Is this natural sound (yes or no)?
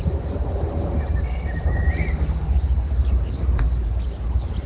no